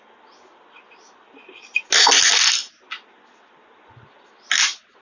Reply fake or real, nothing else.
real